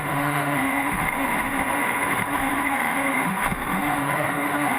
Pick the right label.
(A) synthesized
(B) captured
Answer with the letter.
A